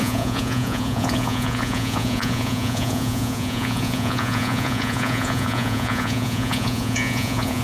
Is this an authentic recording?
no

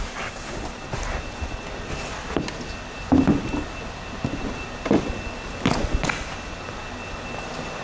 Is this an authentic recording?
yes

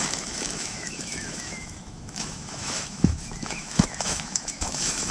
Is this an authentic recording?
no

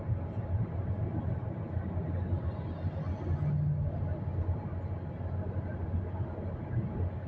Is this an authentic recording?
yes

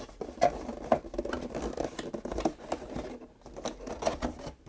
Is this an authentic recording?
yes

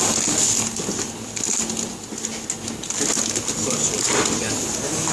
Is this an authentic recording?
yes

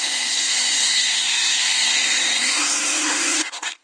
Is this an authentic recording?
no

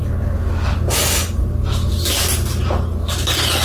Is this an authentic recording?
yes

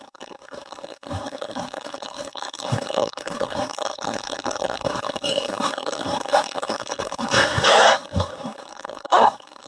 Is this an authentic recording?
no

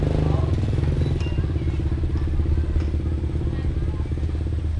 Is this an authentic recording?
yes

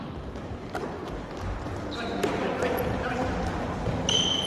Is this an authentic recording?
no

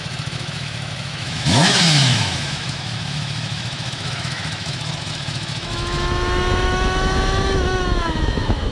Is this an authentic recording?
no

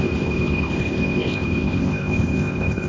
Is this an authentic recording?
no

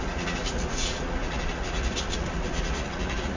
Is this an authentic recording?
no